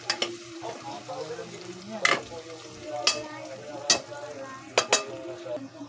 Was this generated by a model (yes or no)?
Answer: no